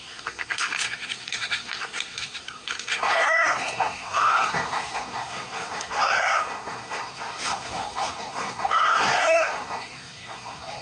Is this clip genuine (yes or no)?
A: no